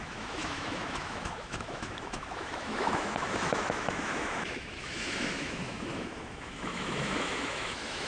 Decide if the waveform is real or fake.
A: fake